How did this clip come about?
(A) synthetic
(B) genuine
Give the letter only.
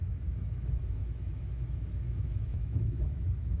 A